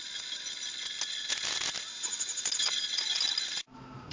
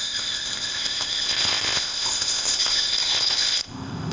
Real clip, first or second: first